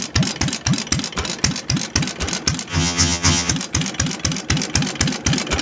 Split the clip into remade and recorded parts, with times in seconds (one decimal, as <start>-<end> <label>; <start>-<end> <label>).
0.0-2.7 recorded; 2.7-3.5 remade; 3.5-5.6 recorded